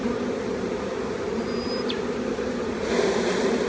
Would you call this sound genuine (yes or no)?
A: yes